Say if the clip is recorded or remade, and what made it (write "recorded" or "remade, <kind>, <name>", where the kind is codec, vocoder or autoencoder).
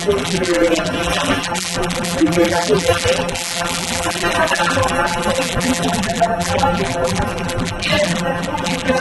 remade, vocoder, BigVGAN v2